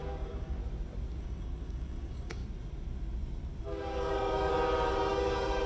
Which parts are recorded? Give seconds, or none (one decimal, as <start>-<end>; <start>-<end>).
0.6-1.2; 2.4-3.6; 4.5-5.1